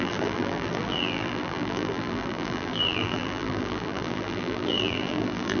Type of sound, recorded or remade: remade